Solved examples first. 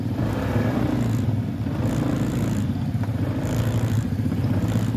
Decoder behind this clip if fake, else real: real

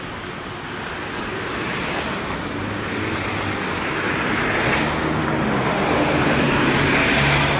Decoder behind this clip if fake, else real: real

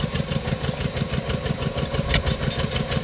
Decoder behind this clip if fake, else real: real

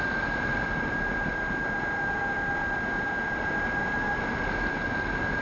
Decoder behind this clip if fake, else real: real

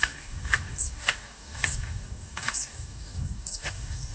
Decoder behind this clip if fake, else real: fake, codec, DAC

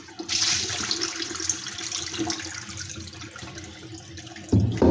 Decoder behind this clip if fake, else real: real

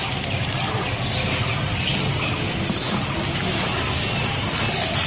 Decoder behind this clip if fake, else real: real